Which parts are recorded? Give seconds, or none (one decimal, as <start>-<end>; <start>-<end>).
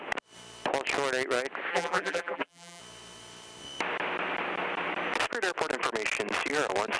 0.0-1.7; 2.8-7.0